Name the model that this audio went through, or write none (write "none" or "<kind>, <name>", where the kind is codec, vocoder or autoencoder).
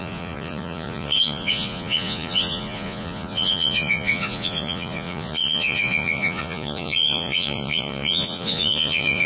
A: vocoder, Vocos